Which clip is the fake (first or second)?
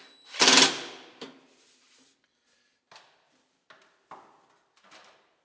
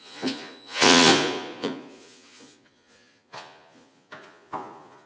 second